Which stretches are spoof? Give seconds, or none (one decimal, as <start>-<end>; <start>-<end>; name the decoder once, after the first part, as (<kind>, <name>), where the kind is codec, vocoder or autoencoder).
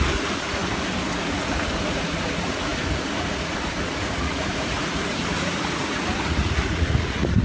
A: 0.0-0.6 (vocoder, Vocos); 1.2-7.4